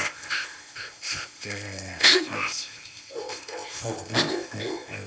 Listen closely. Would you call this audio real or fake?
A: fake